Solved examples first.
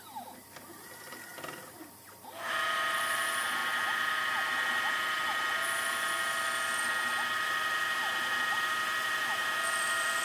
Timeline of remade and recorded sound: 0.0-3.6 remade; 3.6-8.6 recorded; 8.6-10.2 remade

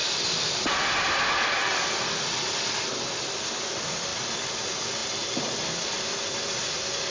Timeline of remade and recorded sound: 0.0-3.0 remade; 3.0-4.1 recorded; 4.1-4.6 remade; 4.6-5.0 recorded; 5.0-5.7 remade; 5.7-7.1 recorded

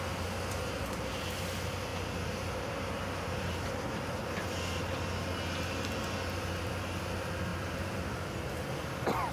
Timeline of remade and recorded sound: 0.0-7.5 recorded; 7.5-9.3 remade

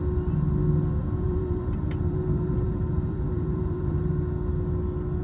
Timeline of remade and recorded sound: 0.0-1.0 recorded; 1.0-4.1 remade; 4.1-5.2 recorded

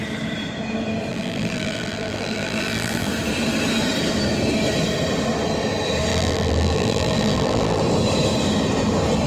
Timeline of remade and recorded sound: 0.0-1.1 recorded; 1.1-3.1 remade; 3.1-6.1 recorded; 6.1-7.8 remade; 7.8-9.3 recorded

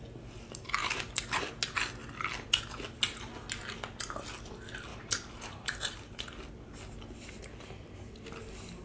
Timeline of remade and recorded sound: 0.0-0.8 recorded; 0.8-1.4 remade; 1.4-4.9 recorded; 4.9-6.1 remade; 6.1-8.8 recorded

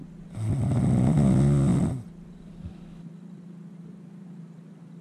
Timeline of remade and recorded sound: 0.0-1.7 recorded; 1.7-5.0 remade